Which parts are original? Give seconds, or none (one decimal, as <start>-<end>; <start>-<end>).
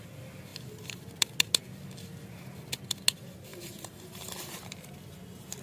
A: 0.0-3.5; 4.8-5.6